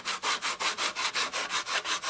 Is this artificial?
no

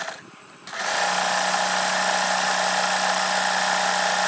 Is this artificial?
no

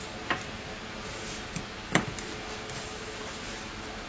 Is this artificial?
no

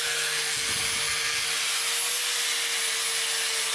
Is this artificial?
no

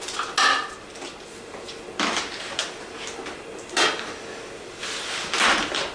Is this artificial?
no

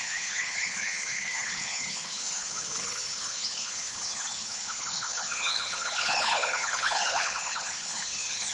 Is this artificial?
yes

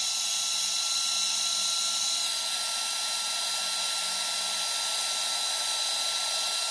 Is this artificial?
no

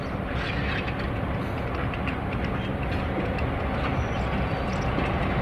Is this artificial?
no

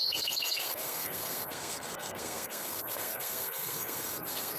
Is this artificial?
yes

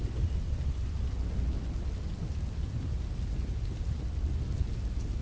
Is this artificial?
no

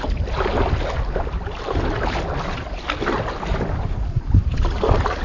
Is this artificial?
no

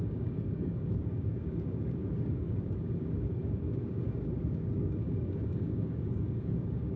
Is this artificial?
yes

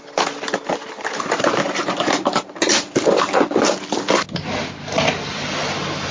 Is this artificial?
no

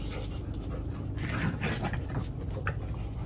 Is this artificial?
no